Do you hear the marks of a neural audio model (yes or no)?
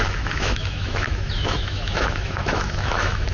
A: yes